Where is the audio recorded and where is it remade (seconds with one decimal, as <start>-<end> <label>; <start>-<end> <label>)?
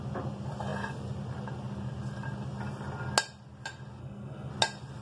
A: 0.0-4.0 recorded; 4.0-4.5 remade; 4.5-5.0 recorded